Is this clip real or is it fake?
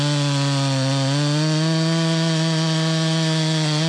real